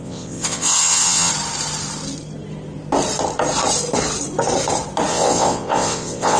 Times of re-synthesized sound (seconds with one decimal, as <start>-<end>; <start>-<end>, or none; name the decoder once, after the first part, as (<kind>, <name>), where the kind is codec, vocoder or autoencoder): 0.0-1.3 (vocoder, WaveNeXt); 5.1-6.4